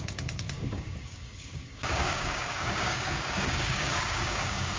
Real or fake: fake